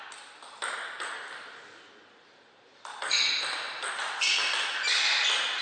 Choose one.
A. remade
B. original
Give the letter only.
B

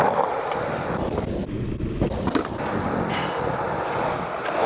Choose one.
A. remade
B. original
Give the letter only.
B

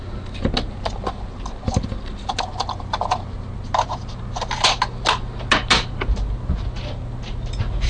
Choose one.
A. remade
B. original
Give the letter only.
B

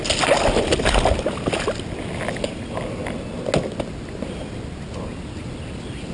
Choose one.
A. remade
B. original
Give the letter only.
B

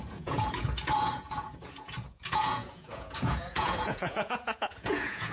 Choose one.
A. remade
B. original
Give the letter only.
A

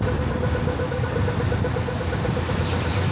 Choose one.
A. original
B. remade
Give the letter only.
A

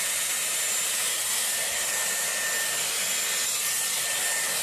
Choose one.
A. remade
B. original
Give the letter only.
B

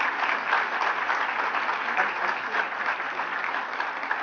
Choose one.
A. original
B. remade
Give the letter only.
A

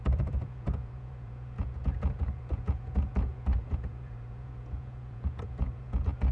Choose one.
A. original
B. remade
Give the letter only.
B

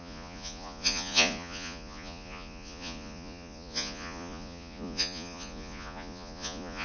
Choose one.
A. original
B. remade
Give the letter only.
B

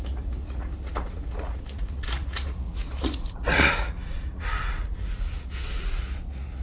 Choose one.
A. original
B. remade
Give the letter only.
B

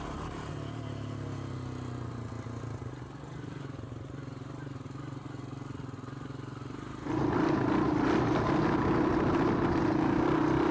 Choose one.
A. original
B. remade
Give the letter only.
A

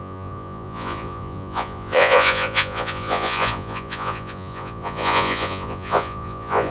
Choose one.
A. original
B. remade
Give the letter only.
B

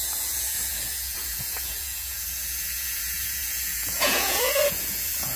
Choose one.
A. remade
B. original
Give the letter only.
A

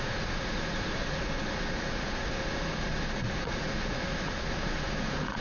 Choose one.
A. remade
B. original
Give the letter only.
A